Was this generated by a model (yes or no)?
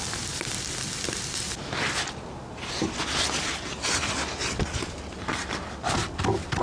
no